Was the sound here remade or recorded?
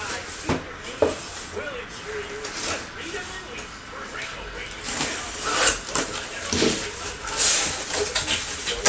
recorded